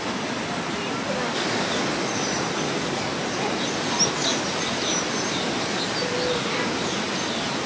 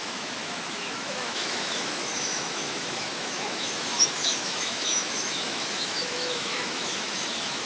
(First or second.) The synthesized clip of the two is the second